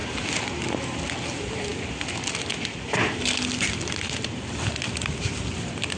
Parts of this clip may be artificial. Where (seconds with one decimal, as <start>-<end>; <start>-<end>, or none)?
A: none